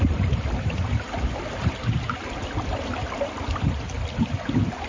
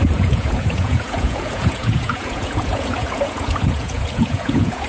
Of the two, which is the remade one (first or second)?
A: second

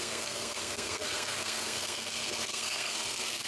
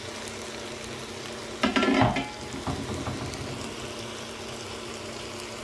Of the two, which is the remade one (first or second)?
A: first